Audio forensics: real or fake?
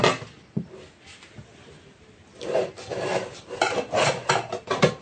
real